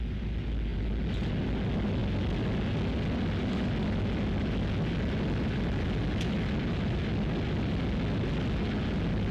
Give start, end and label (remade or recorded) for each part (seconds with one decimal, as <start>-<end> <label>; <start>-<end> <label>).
0.0-9.3 recorded